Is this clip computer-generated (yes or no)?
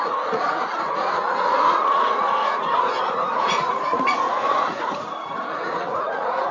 yes